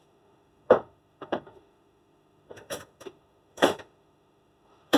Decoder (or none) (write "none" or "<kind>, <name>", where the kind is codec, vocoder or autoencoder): autoencoder, DAC-VAE